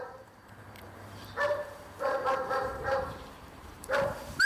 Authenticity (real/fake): fake